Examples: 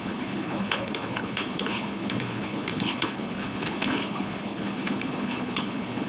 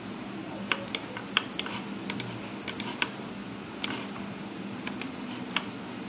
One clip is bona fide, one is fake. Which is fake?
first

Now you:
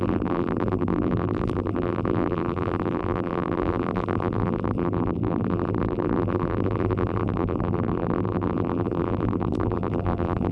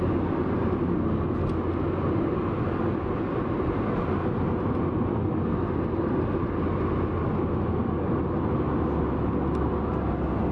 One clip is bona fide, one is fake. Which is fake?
first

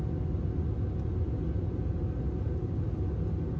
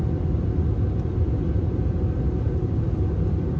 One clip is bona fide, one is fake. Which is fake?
second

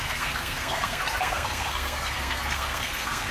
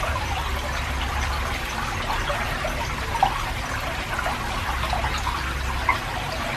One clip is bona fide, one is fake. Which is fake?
first